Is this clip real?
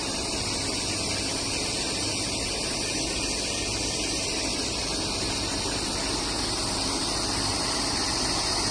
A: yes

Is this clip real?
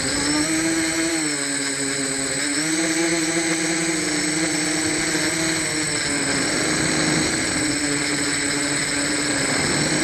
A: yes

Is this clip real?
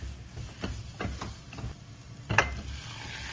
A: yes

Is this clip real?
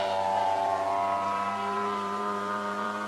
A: no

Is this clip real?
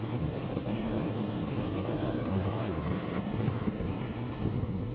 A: no